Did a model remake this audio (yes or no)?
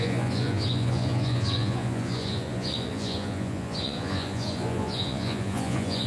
yes